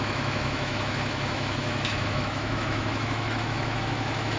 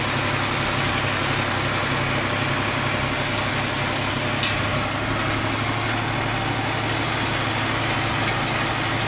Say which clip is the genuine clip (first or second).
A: second